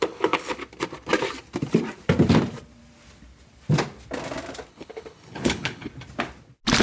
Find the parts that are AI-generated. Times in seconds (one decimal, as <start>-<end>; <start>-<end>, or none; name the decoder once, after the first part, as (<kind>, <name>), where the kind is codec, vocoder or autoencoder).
0.0-0.6 (codec, HILCodec); 4.7-5.9